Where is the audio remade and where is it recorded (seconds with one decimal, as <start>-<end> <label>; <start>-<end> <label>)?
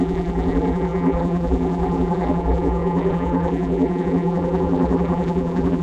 0.0-5.8 remade